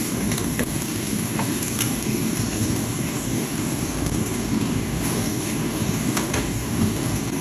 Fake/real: fake